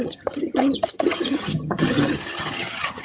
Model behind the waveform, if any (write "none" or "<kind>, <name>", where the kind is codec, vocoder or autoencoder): vocoder, HiFi-GAN